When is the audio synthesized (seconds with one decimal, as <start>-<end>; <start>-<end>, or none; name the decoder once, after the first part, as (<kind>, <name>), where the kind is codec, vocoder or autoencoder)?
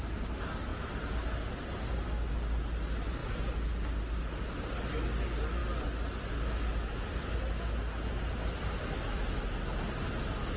none